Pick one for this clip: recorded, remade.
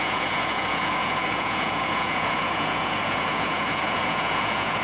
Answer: remade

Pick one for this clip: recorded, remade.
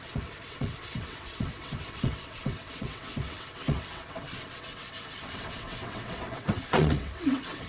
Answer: remade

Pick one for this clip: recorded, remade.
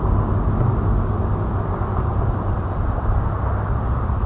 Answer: recorded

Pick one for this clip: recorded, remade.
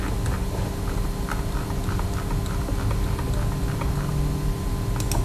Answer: recorded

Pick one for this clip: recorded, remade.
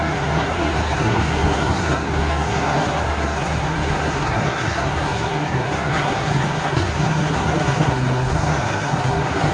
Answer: remade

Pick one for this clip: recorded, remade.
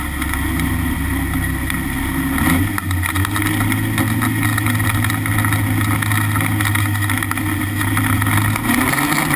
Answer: recorded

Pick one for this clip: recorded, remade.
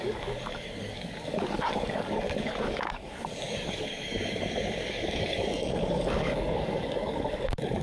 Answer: remade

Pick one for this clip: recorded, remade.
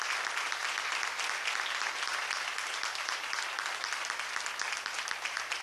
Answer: recorded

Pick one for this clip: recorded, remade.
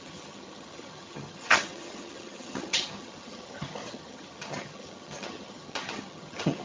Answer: remade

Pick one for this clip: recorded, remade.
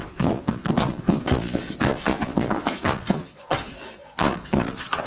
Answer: remade